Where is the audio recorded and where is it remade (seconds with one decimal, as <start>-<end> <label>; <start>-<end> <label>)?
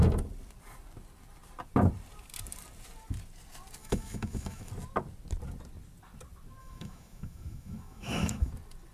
0.0-3.8 recorded; 3.8-4.7 remade; 4.7-6.6 recorded; 6.6-8.5 remade; 8.5-8.9 recorded